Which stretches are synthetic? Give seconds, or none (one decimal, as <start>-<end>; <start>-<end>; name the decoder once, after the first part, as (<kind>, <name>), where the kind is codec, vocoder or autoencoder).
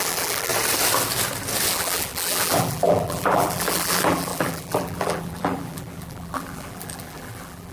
0.0-0.5 (vocoder, BigVGAN v2); 1.7-7.7